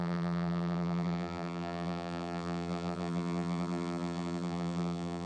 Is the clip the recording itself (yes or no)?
no